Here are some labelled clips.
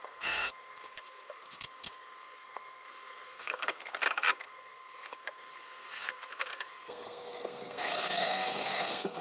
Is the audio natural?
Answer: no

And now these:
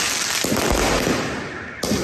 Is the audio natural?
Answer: yes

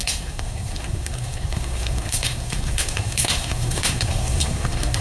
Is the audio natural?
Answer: no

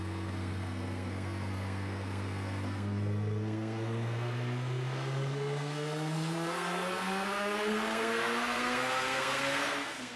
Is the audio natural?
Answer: no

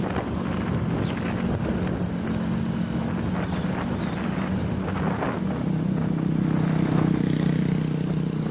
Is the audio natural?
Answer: yes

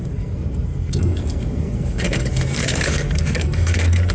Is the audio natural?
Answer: no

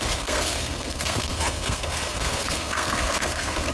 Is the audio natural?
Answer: no